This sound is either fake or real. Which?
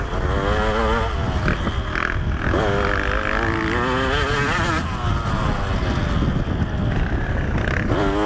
real